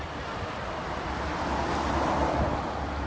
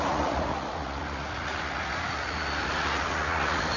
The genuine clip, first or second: first